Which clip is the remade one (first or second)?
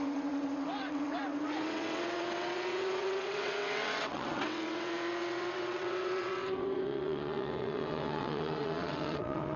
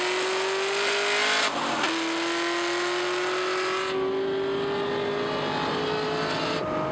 first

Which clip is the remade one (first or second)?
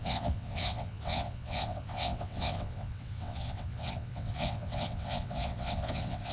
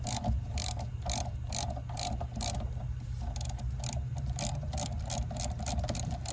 first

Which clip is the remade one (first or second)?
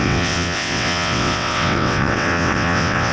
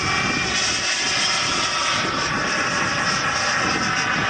first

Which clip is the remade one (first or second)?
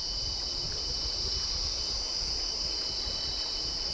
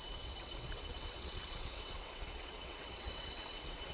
second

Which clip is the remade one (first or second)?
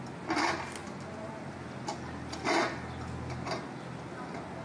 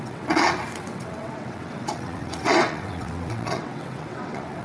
second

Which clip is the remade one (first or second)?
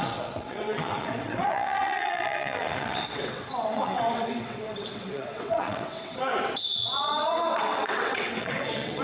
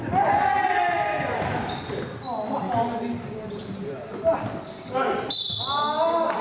first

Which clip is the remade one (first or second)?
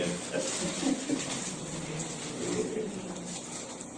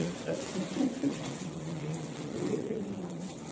second